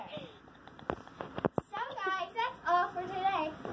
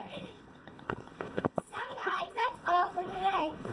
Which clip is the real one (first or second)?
first